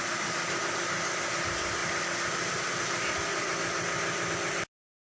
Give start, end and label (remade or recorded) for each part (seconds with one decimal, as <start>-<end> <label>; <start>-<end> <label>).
0.0-5.0 recorded